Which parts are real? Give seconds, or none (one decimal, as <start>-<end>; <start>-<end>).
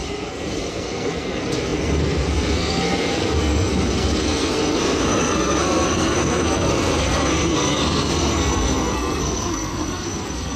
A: none